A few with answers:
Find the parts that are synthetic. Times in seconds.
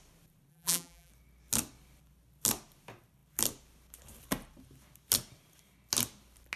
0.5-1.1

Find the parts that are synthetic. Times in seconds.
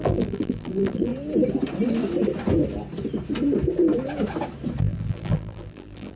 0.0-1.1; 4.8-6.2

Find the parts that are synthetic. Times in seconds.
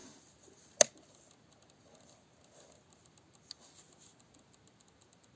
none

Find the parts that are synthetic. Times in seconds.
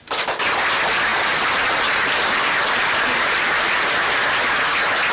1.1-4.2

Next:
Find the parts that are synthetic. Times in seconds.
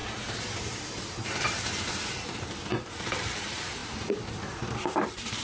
0.0-5.4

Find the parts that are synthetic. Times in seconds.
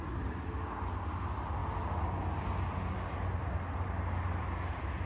none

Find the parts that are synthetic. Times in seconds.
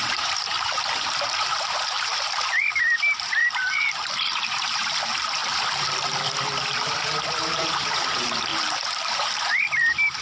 0.0-5.4; 6.6-8.5; 9.1-10.2